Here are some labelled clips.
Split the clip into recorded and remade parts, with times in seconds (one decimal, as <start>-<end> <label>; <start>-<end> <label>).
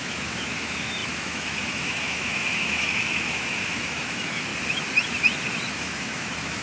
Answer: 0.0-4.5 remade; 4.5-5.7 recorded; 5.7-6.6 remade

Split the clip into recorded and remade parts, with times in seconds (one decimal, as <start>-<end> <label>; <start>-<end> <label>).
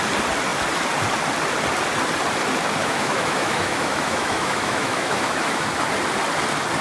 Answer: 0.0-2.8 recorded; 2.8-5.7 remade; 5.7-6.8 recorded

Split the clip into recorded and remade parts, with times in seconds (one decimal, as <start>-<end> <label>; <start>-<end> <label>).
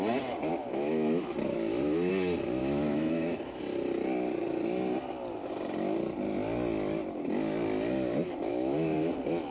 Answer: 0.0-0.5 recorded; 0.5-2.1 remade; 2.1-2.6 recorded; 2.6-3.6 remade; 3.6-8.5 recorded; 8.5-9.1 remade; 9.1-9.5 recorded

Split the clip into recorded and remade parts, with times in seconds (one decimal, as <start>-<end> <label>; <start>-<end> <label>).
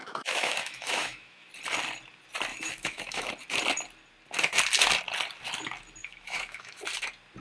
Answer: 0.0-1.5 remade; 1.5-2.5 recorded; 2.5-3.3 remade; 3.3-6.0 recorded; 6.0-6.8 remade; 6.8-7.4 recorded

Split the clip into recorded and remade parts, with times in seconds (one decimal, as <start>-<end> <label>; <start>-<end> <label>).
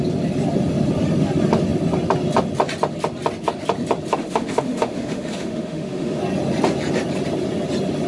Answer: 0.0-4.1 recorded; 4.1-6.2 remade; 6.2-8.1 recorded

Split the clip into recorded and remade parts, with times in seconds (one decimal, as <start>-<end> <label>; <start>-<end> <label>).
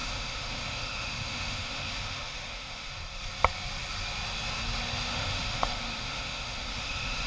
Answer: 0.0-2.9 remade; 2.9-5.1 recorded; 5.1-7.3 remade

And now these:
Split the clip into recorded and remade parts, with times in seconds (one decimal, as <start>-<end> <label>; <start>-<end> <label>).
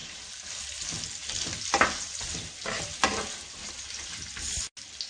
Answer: 0.0-5.1 recorded